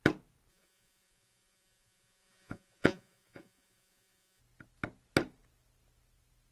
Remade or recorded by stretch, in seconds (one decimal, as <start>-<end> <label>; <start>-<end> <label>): 0.0-0.5 recorded; 0.5-4.4 remade; 4.4-6.5 recorded